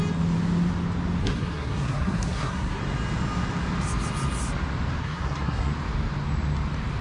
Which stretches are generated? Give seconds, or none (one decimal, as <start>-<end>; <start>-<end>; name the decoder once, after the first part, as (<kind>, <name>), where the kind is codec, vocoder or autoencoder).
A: 1.2-2.8 (codec, SNAC); 5.0-5.7